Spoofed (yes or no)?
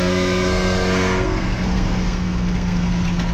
yes